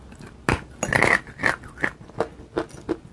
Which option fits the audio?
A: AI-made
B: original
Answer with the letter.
B